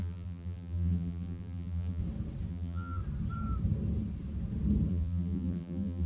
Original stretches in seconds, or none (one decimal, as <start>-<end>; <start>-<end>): 2.0-2.5; 3.0-4.9